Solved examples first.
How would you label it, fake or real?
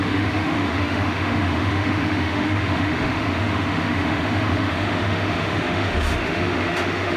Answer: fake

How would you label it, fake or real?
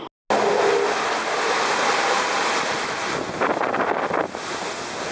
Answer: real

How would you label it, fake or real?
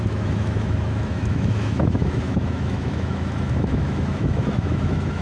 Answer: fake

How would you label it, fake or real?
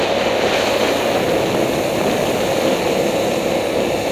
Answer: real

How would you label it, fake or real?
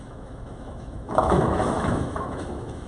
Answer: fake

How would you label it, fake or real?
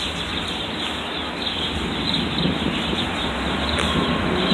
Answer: real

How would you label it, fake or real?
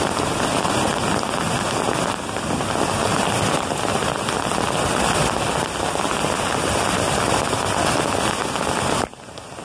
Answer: real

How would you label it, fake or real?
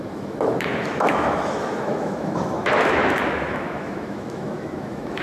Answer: fake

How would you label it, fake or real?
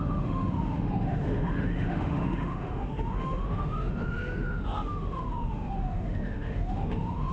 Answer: fake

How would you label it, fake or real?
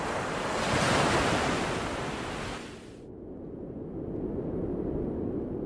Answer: real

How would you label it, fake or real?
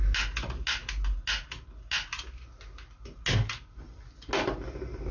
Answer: real